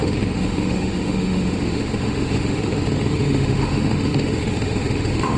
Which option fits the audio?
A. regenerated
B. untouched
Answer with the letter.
A